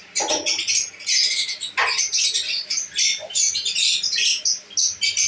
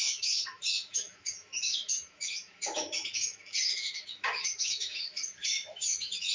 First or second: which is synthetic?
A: second